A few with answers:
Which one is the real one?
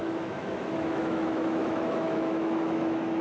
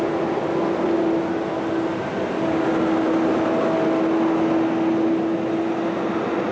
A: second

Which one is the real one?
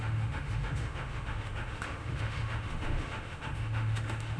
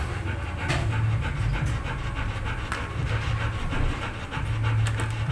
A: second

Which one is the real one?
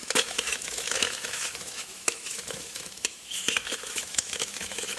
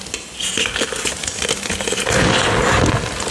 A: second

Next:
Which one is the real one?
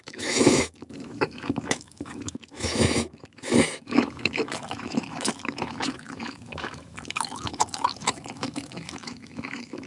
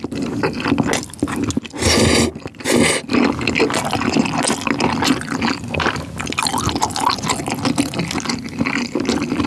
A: second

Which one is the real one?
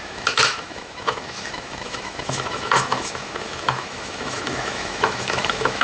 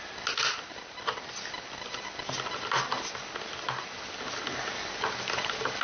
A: second